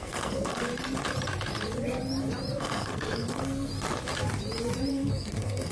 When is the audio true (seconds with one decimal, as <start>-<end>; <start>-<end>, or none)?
0.7-2.6; 3.7-4.9